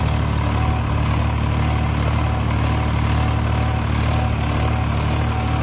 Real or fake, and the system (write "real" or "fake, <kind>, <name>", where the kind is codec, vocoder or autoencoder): real